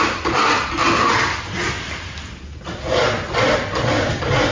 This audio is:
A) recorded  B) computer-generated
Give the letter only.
A